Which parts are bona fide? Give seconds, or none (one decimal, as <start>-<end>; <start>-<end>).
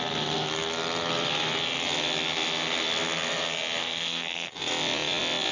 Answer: 0.0-3.8; 4.5-5.5